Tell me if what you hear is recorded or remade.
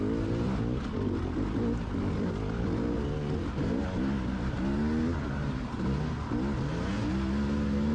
recorded